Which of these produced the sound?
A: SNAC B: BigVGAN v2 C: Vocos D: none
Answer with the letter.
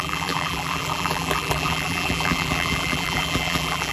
B